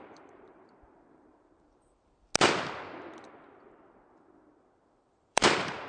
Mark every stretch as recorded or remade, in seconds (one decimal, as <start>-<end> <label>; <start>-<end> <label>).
0.0-2.3 remade; 2.3-5.3 recorded; 5.3-5.9 remade